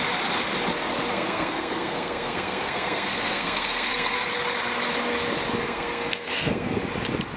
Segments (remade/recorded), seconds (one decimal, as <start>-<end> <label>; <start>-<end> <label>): 0.0-1.1 recorded; 1.1-4.3 remade; 4.3-5.6 recorded; 5.6-6.8 remade; 6.8-7.4 recorded